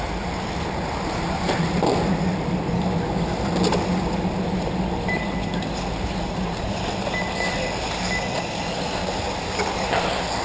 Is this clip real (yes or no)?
yes